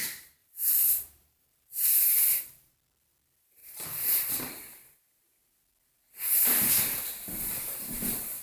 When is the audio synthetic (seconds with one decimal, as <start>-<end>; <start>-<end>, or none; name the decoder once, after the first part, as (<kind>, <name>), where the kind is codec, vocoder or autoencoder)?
0.4-2.0 (vocoder, BigVGAN v2); 3.6-4.3